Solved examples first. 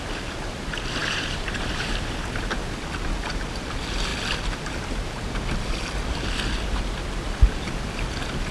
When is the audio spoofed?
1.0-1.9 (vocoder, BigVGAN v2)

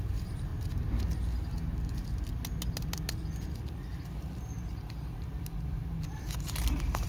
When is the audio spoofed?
0.0-0.5 (vocoder, BigVGAN v2); 4.6-7.1